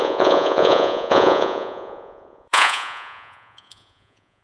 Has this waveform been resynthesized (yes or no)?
yes